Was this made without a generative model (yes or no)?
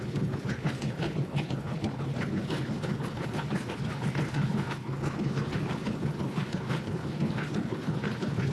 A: no